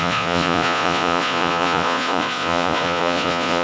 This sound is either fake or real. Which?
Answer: fake